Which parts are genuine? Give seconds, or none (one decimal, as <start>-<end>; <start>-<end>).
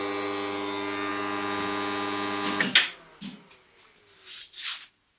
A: 0.0-5.2